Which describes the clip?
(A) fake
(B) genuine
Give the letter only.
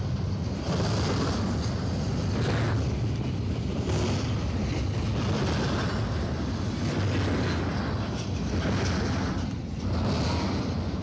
B